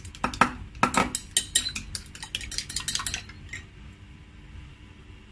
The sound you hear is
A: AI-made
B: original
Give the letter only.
B